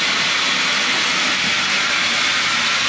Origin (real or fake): real